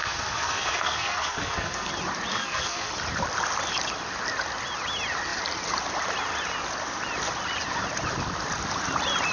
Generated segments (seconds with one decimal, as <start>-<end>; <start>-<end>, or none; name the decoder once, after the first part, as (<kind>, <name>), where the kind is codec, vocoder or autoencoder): 0.0-1.9 (codec, SNAC); 2.3-2.9